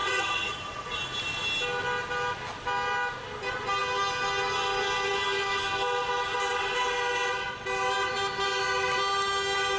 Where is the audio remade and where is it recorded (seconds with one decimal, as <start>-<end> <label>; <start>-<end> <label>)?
0.0-1.0 remade; 1.0-9.8 recorded